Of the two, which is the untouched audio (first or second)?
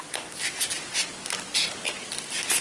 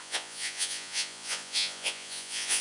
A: first